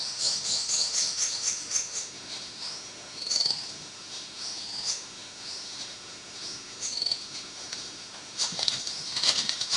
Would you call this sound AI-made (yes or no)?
yes